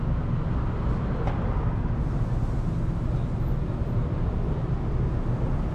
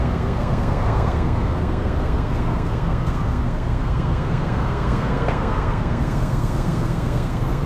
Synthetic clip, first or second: second